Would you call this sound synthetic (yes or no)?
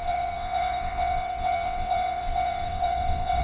yes